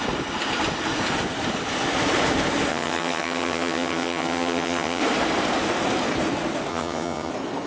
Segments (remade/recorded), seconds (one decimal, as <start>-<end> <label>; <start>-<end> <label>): 0.0-2.7 recorded; 2.7-5.0 remade; 5.0-6.7 recorded; 6.7-7.3 remade; 7.3-7.7 recorded